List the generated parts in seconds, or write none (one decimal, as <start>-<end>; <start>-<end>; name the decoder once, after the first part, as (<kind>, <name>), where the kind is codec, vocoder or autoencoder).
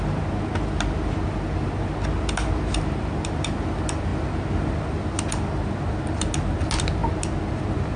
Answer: none